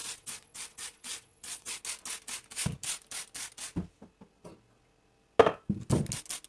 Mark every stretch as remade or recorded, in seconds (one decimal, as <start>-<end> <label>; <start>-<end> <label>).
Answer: 0.0-1.8 remade; 1.8-6.5 recorded